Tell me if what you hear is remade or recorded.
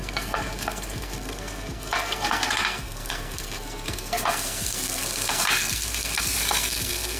remade